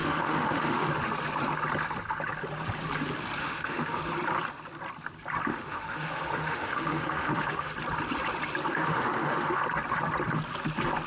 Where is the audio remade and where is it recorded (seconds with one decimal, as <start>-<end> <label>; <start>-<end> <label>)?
0.0-0.9 remade; 0.9-3.4 recorded; 3.4-4.0 remade; 4.0-5.5 recorded; 5.5-7.7 remade; 7.7-8.7 recorded; 8.7-9.6 remade; 9.6-11.1 recorded